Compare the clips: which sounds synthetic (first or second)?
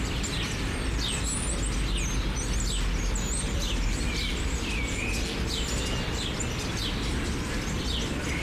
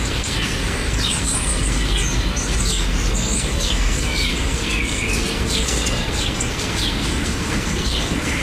second